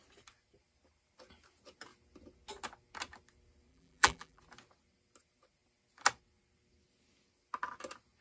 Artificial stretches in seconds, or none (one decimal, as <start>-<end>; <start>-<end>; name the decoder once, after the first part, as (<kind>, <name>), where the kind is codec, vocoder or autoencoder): 3.7-4.4 (vocoder, BigVGAN v2)